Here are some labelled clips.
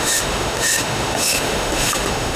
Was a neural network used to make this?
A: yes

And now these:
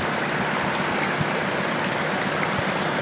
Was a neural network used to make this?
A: no